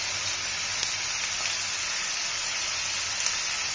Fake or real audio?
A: fake